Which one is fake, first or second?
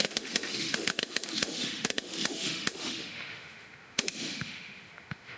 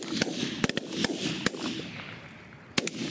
first